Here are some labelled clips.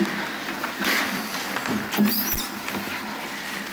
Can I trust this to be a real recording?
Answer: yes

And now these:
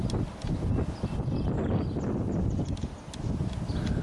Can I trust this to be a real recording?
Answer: yes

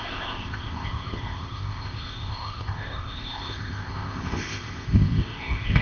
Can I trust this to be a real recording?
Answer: no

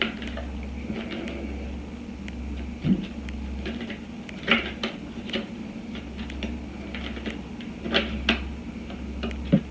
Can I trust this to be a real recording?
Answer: yes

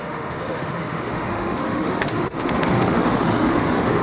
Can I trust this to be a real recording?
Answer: no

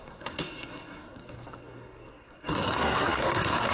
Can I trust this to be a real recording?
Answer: no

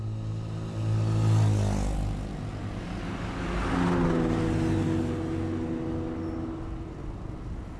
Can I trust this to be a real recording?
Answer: yes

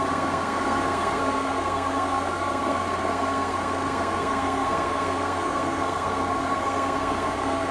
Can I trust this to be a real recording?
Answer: no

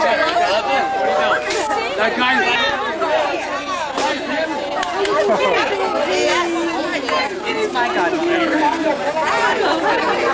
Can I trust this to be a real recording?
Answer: yes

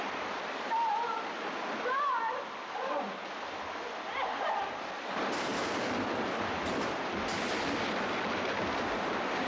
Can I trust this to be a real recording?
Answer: yes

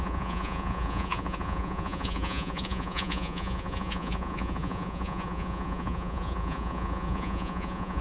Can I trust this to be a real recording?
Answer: no